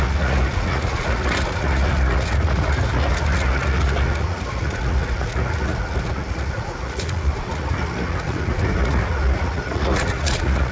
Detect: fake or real fake